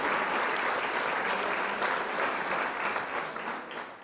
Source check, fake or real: real